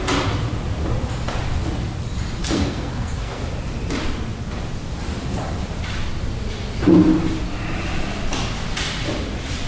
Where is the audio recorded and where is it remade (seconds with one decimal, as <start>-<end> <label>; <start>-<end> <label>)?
0.0-2.4 recorded; 2.4-3.4 remade; 3.4-9.7 recorded